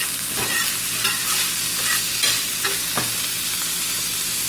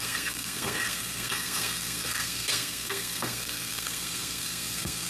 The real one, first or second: first